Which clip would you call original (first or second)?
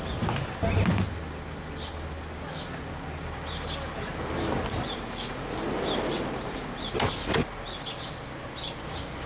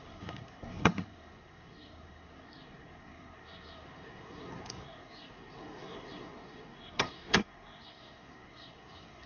first